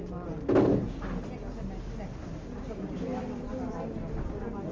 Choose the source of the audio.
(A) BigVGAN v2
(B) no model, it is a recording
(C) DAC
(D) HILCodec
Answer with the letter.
B